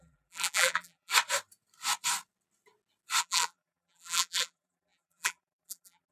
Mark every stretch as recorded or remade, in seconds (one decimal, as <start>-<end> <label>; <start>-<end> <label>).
0.0-1.1 remade; 1.1-3.2 recorded; 3.2-6.1 remade